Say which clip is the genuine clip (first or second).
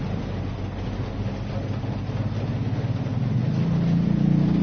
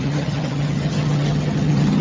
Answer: first